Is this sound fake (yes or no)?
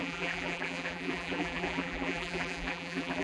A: yes